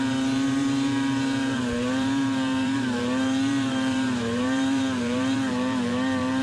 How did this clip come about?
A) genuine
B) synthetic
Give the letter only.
B